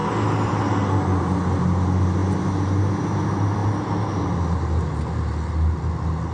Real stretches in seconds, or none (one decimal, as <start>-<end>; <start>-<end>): 0.0-6.3